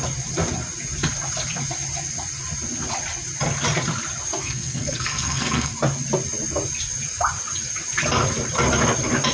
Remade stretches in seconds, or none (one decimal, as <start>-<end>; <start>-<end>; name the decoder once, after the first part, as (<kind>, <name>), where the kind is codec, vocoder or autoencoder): 4.4-5.7 (codec, SNAC)